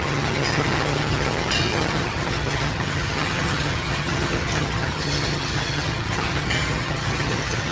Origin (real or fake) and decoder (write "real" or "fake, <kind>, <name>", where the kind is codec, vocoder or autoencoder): fake, vocoder, HiFi-GAN